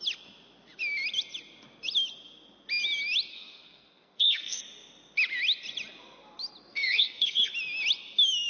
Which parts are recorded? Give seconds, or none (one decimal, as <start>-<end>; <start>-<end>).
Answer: 0.0-3.3; 4.6-6.7; 7.5-8.5